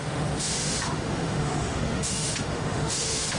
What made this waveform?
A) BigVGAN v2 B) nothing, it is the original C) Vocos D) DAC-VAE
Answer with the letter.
D